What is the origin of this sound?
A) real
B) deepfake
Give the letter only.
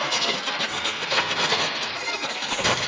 B